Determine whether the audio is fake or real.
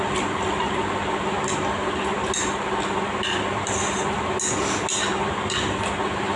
real